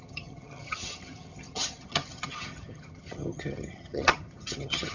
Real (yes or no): no